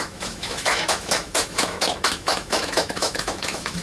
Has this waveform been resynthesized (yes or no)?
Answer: yes